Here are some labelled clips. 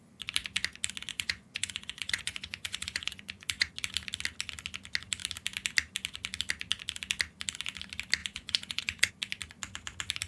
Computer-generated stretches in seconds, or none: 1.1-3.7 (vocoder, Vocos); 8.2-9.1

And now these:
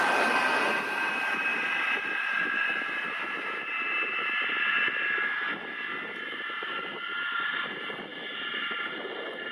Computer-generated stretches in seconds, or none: 1.5-2.8 (vocoder, BigVGAN v2); 8.1-9.0

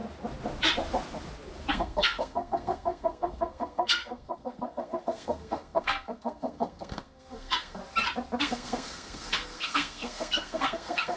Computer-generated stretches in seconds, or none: 1.7-7.8 (codec, SNAC); 8.4-11.2

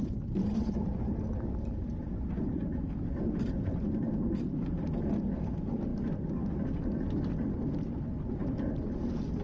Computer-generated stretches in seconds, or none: none

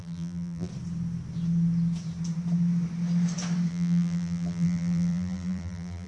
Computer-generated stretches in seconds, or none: 0.0-0.7 (vocoder, BigVGAN v2); 3.7-6.1

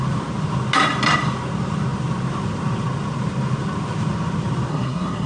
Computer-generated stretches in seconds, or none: 4.7-5.3 (codec, SNAC)